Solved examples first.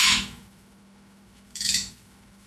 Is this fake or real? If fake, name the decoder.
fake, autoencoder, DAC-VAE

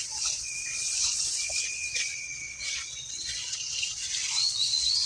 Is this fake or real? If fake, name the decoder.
fake, vocoder, Vocos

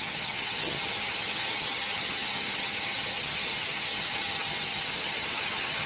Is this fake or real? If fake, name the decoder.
fake, vocoder, HiFi-GAN